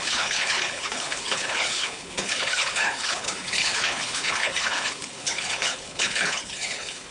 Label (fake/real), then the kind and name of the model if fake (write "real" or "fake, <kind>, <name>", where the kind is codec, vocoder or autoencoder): fake, codec, HILCodec